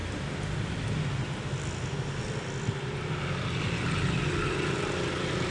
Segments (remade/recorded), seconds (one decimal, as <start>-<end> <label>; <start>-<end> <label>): 0.0-5.5 remade